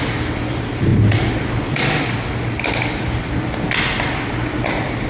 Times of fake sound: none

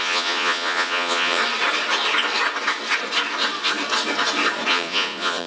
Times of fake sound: 0.0-1.4 (vocoder, Vocos); 4.7-5.5

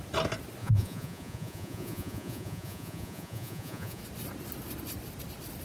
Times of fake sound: 0.6-4.0 (vocoder, Vocos)

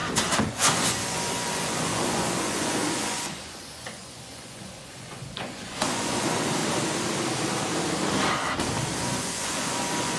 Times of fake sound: 0.5-6.6 (vocoder, Vocos); 9.0-10.2

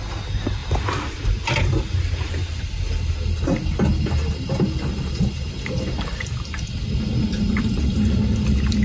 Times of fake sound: none

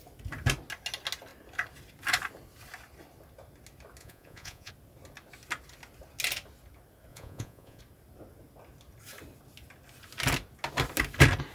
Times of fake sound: 4.0-4.7 (vocoder, Vocos); 7.1-7.8